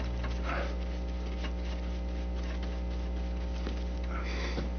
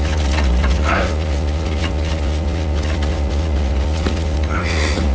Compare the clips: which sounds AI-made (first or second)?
second